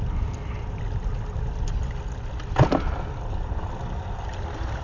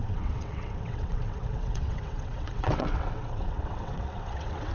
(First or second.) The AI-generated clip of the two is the second